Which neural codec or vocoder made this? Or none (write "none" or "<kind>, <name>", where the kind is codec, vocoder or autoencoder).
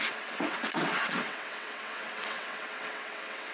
vocoder, WaveNeXt